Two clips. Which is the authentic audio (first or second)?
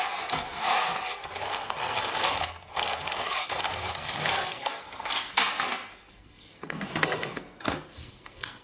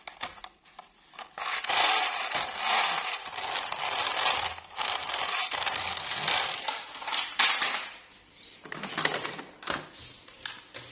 second